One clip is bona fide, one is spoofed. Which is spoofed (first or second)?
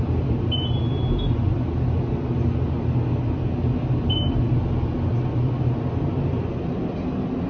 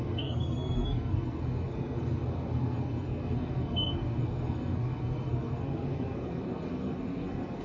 second